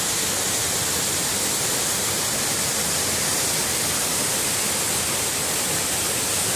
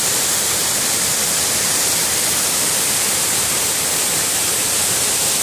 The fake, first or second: second